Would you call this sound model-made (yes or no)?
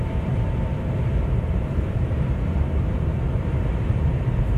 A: yes